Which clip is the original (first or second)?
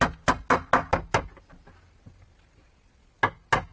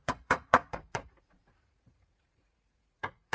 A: first